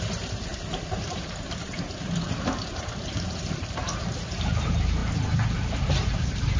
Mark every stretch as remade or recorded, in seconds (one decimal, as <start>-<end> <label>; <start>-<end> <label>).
0.0-6.6 remade